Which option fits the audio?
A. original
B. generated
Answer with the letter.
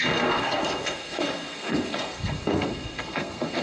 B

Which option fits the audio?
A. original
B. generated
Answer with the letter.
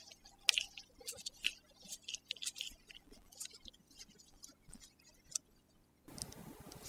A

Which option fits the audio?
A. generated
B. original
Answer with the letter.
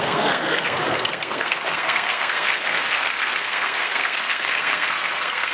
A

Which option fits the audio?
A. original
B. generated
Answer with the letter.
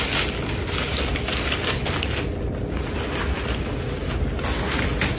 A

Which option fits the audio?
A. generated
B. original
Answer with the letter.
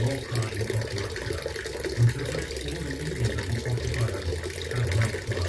B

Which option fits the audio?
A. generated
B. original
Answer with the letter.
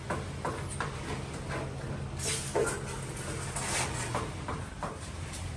B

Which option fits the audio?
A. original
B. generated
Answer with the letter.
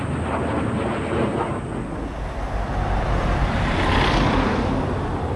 A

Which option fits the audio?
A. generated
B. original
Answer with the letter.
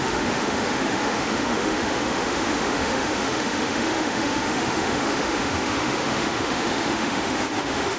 A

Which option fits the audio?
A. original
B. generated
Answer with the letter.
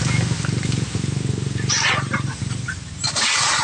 A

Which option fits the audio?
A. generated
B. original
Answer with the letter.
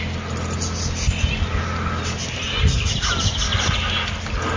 B